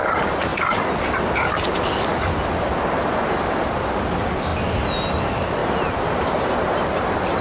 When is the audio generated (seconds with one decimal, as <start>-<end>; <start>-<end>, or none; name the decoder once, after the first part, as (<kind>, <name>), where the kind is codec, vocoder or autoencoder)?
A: 0.0-0.5 (vocoder, BigVGAN v2); 4.1-4.5; 5.1-5.6; 6.3-7.4